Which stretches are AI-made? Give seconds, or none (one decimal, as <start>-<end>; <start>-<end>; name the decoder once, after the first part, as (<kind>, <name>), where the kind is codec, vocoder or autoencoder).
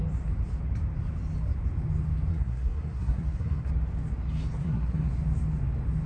2.3-3.7 (codec, SNAC); 4.6-5.1